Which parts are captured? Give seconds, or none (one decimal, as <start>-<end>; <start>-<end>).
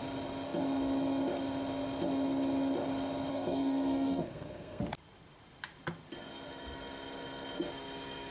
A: 0.0-3.3; 4.8-8.3